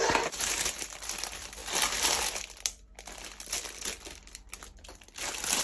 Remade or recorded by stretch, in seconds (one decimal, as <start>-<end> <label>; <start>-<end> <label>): 0.0-5.6 recorded